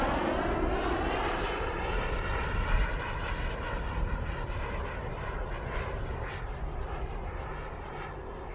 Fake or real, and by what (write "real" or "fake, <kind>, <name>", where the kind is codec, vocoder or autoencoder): real